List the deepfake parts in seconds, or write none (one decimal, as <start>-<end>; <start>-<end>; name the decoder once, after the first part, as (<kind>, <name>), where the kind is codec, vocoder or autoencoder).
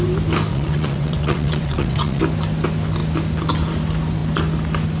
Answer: 0.5-2.2 (vocoder, WaveNeXt)